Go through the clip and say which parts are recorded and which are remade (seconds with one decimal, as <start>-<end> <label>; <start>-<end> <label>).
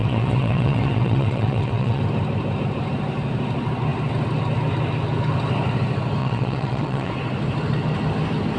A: 0.0-2.0 remade; 2.0-6.2 recorded; 6.2-7.1 remade; 7.1-8.6 recorded